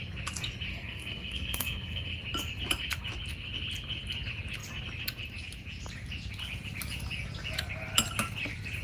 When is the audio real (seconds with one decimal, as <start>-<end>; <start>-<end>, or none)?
0.0-0.7; 2.1-8.8